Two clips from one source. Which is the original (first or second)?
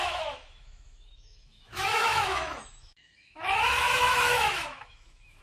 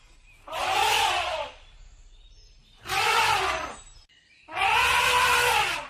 second